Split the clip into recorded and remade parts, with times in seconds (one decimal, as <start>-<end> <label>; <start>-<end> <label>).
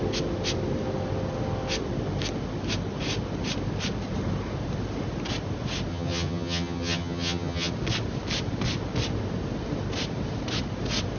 0.0-5.9 recorded; 5.9-7.7 remade; 7.7-11.2 recorded